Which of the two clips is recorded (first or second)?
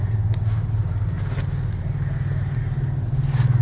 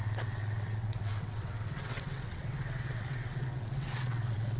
first